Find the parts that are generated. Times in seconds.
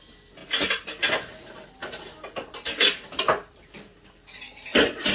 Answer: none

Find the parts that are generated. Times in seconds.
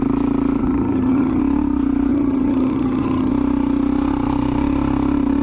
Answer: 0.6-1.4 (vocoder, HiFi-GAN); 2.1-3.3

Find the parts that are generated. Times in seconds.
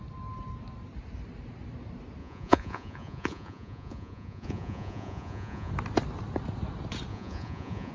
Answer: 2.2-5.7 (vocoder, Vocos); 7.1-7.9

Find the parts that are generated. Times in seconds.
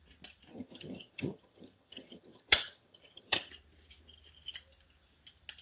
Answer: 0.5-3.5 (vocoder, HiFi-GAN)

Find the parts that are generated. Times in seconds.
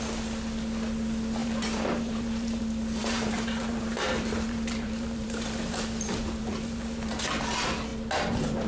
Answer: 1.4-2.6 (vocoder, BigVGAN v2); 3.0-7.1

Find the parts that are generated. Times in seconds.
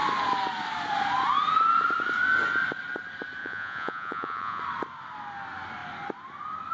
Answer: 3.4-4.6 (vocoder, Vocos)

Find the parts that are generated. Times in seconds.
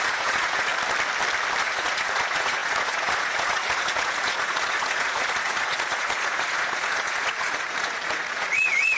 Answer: 0.0-0.7 (vocoder, Vocos); 1.6-9.0